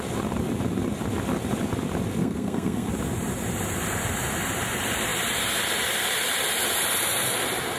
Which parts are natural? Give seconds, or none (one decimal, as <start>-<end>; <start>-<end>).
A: 0.0-2.2; 2.9-7.8